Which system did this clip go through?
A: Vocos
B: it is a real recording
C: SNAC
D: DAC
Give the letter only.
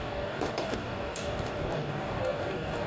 D